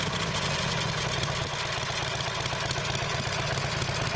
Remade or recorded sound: recorded